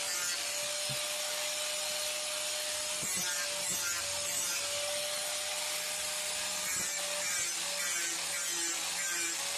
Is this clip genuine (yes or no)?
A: yes